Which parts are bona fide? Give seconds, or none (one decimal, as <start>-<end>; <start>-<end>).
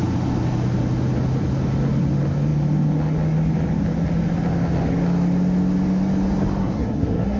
0.0-6.6